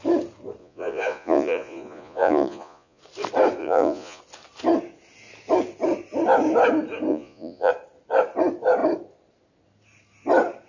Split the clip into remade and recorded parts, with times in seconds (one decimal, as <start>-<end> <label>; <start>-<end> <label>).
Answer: 0.0-0.6 recorded; 0.6-3.0 remade; 3.0-3.6 recorded; 3.6-4.2 remade; 4.2-7.1 recorded; 7.1-7.7 remade; 7.7-10.7 recorded